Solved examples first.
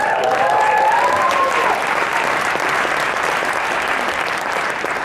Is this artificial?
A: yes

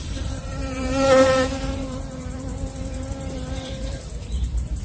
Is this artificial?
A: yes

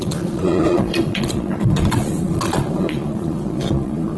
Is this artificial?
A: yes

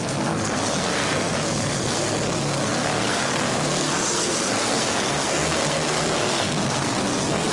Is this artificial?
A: yes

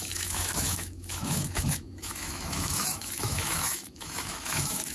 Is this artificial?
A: yes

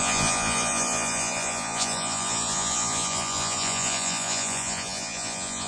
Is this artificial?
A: yes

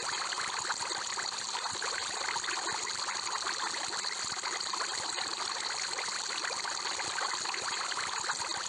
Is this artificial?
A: no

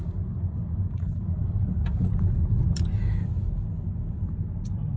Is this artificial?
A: no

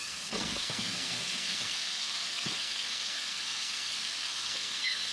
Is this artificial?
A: yes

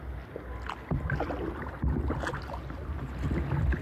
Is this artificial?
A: no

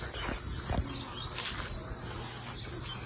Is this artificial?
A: no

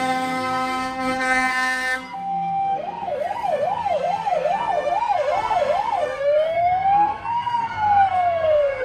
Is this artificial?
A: yes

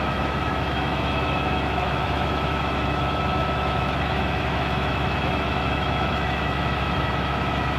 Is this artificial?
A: yes